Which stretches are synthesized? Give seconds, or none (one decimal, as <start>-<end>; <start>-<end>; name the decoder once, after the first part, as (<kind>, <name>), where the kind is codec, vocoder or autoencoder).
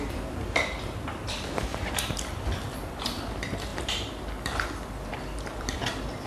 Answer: 0.0-6.3 (vocoder, BigVGAN v2)